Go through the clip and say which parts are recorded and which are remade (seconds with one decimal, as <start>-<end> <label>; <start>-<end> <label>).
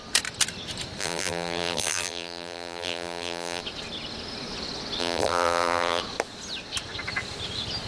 0.0-1.0 recorded; 1.0-3.6 remade; 3.6-5.0 recorded; 5.0-6.0 remade; 6.0-7.9 recorded